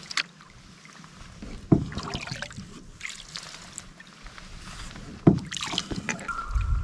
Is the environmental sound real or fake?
real